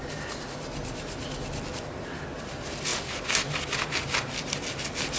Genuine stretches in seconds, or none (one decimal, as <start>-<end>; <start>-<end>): 0.0-5.2